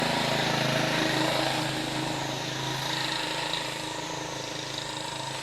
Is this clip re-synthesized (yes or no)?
no